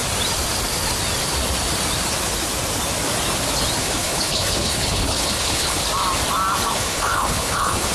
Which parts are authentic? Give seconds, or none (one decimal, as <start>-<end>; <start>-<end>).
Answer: 0.0-3.8; 5.8-6.7